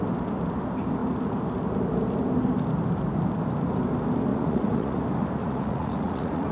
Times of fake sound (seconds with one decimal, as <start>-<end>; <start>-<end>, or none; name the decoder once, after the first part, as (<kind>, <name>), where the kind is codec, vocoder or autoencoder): 4.3-5.0 (vocoder, Vocos); 5.4-6.5